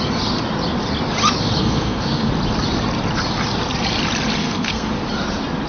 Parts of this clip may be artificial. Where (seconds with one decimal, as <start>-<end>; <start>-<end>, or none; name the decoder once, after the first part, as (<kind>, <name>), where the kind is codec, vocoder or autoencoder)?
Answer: 1.6-2.3 (codec, SNAC); 4.4-4.9